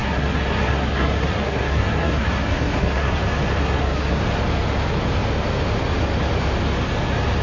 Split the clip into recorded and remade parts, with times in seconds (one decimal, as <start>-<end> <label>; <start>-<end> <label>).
0.0-3.2 remade; 3.2-3.6 recorded; 3.6-4.2 remade; 4.2-7.4 recorded